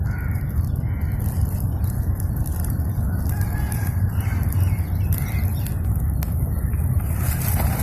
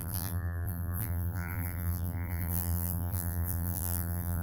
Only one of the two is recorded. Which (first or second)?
first